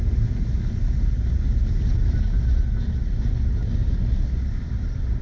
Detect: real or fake real